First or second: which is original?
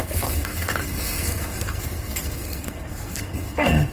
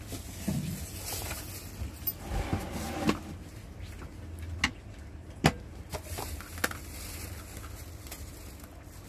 second